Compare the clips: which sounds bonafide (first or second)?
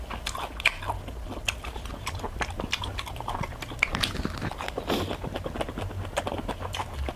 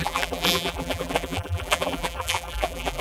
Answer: first